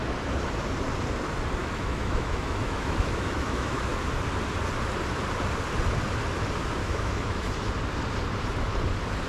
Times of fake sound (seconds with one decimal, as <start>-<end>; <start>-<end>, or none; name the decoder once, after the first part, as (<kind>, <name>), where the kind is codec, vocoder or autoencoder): 1.6-3.9 (autoencoder, DAC-VAE); 6.8-7.5